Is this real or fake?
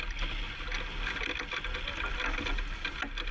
real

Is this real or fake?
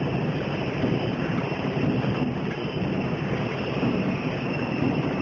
fake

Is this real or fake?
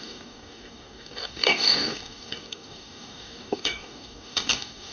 fake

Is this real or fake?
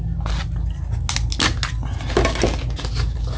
real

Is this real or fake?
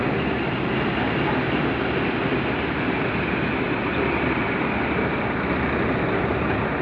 real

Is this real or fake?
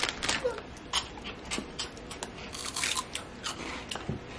real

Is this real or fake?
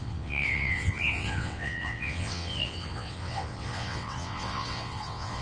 fake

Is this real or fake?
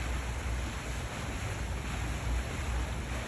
real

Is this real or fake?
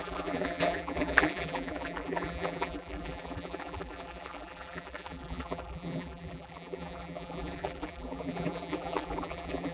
fake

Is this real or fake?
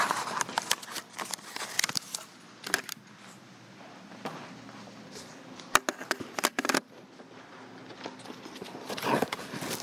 real